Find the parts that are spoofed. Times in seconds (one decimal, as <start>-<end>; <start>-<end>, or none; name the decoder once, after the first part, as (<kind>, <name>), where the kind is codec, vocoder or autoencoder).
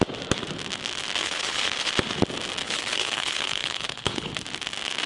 1.2-1.9 (codec, HILCodec); 2.6-4.3